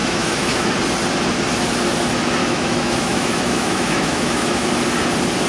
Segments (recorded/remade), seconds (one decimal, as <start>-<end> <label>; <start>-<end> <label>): 0.0-0.7 remade; 0.7-2.4 recorded; 2.4-4.7 remade; 4.7-5.5 recorded